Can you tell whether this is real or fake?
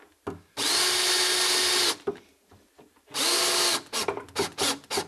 real